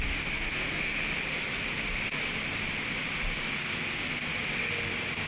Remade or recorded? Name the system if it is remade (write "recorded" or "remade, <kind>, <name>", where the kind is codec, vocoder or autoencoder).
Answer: recorded